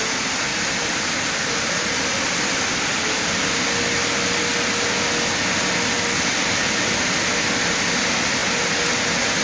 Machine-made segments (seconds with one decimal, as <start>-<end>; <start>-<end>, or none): 0.5-3.2